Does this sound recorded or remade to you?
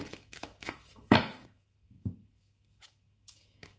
remade